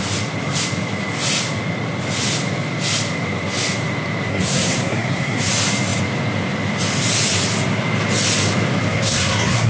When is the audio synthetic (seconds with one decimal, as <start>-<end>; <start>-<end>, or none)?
4.3-5.5; 8.9-9.7